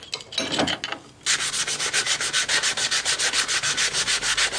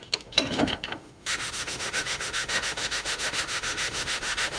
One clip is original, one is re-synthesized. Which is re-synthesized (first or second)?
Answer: second